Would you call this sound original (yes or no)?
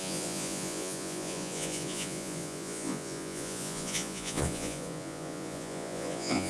no